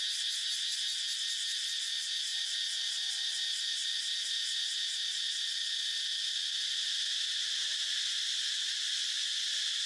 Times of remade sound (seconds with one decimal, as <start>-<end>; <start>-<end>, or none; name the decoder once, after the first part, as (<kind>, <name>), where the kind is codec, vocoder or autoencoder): none